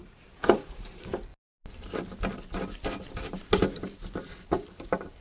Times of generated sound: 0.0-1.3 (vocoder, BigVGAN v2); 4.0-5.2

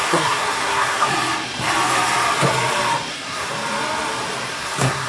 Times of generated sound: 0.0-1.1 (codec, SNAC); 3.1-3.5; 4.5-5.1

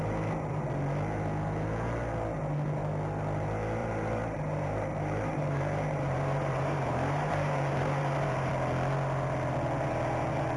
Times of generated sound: 3.8-8.5 (vocoder, BigVGAN v2)

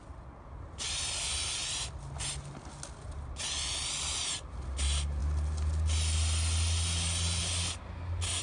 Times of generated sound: none